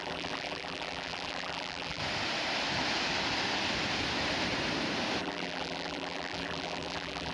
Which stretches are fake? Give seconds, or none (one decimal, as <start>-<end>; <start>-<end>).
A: 0.0-2.0; 5.2-7.3